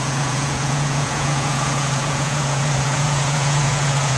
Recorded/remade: remade